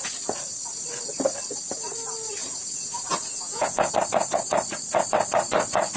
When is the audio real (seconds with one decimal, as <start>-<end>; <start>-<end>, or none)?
0.0-2.4; 3.9-6.0